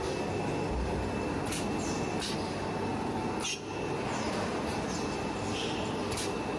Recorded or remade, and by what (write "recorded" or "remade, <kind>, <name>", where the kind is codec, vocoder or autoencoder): recorded